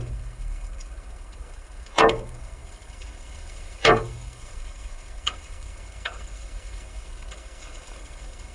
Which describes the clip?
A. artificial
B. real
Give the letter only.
A